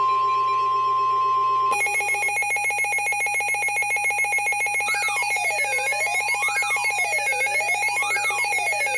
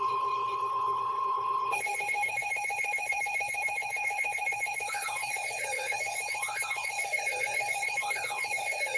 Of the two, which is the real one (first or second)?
first